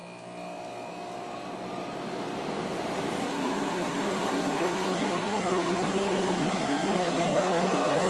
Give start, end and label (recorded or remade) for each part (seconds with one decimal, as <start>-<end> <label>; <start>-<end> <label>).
0.0-3.2 recorded; 3.2-8.1 remade